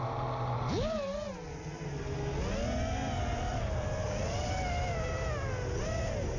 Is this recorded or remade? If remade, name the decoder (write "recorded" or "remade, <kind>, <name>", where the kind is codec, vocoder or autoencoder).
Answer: recorded